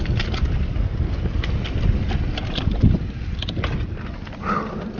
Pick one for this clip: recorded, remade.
recorded